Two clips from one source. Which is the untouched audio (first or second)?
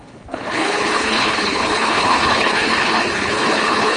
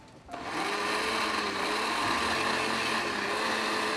second